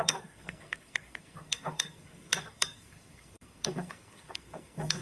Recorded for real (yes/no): no